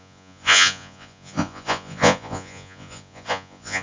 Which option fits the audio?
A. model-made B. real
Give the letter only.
A